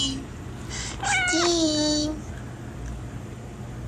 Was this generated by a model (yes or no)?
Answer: no